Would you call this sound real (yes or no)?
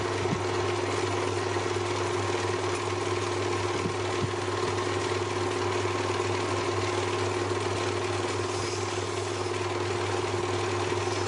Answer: yes